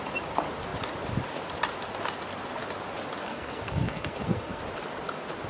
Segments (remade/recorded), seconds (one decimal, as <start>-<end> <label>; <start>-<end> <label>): 0.0-3.3 recorded; 3.3-4.6 remade; 4.6-5.5 recorded